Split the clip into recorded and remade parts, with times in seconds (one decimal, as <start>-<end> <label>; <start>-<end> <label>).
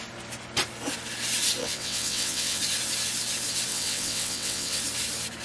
0.0-1.6 recorded; 1.6-2.6 remade; 2.6-3.7 recorded; 3.7-4.8 remade; 4.8-5.4 recorded